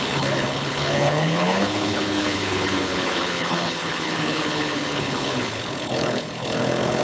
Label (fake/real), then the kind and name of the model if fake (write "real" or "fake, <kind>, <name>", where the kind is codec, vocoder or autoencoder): fake, codec, HILCodec